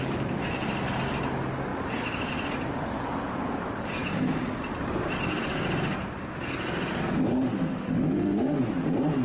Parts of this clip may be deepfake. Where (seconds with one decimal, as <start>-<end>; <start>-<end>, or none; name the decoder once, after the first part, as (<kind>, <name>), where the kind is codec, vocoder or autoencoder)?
7.3-8.6 (autoencoder, DAC-VAE)